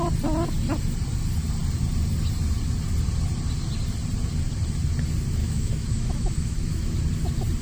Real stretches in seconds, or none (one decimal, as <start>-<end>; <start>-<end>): 0.0-5.4; 7.0-7.6